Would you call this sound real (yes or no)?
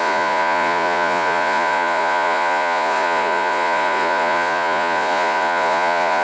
no